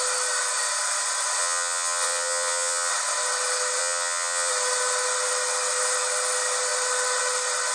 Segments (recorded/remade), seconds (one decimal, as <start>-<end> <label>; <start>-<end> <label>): 0.0-1.4 recorded; 1.4-2.9 remade; 2.9-3.8 recorded; 3.8-4.5 remade; 4.5-7.7 recorded